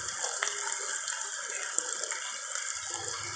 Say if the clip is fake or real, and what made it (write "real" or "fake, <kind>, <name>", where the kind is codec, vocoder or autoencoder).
real